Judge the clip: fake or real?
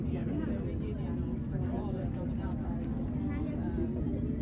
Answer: real